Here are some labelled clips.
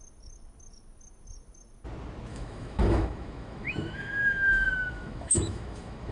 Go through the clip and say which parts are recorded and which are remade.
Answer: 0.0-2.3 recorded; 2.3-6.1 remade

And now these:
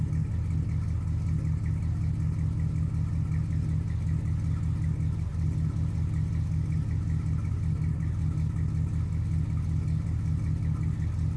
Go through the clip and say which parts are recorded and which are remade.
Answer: 0.0-11.4 recorded